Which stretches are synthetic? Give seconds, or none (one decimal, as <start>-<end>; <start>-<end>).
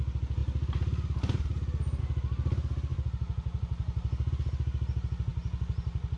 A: 2.9-4.3